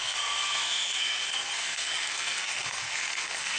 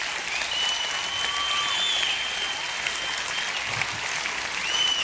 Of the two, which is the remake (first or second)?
first